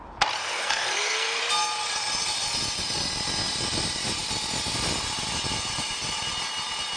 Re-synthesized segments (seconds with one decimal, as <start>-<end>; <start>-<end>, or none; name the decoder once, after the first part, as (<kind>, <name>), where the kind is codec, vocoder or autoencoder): 0.4-1.4 (codec, SNAC)